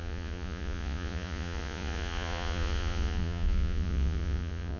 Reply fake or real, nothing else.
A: fake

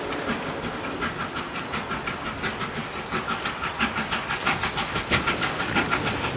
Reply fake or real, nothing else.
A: real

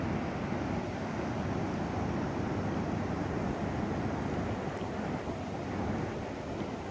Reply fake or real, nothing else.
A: real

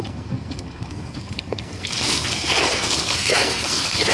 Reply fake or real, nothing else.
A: fake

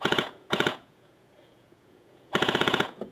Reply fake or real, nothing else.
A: fake